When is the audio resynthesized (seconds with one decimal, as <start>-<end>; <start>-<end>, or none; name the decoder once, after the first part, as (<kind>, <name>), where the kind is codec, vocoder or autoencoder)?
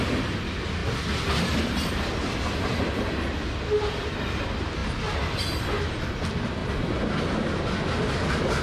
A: 0.8-2.8 (vocoder, BigVGAN v2)